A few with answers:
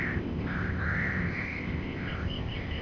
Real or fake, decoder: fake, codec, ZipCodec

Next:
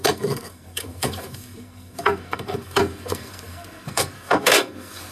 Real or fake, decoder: fake, codec, SNAC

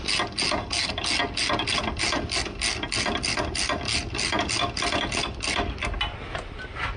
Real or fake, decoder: real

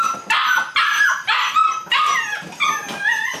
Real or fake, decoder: real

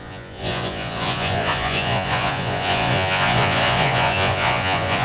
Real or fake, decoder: fake, vocoder, Vocos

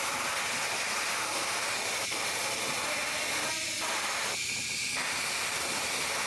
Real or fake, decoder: real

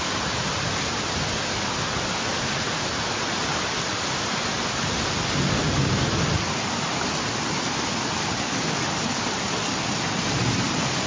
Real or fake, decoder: real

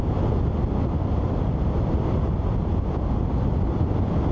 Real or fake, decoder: real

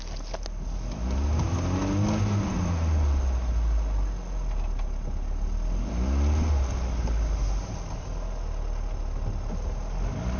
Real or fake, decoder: real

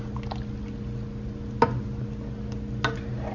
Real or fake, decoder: real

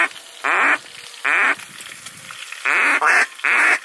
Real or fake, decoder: real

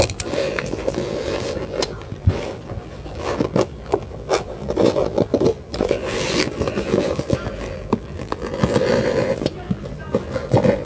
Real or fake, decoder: fake, vocoder, BigVGAN v2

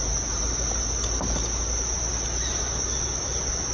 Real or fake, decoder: real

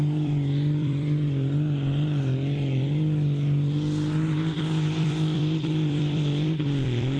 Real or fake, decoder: fake, vocoder, BigVGAN v2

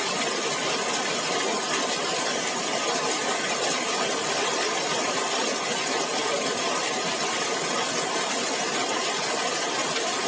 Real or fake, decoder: real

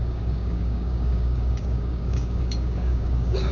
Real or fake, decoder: fake, codec, DAC